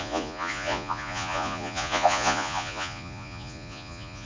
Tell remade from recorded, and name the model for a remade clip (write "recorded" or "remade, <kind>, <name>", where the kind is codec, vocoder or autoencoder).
remade, vocoder, Vocos